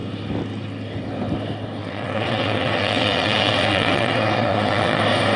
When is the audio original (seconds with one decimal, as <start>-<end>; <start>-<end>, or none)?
0.0-1.8; 5.0-5.4